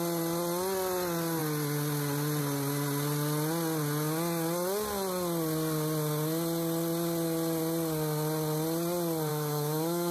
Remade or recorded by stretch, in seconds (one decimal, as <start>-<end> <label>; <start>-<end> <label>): 0.0-9.3 recorded; 9.3-10.1 remade